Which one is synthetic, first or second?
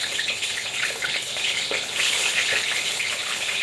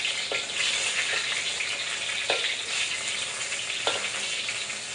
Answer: first